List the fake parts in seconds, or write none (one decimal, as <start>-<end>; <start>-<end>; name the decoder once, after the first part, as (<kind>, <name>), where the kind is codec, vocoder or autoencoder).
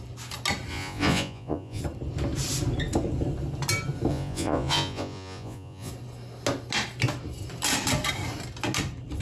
0.7-1.8 (vocoder, Vocos); 4.1-5.9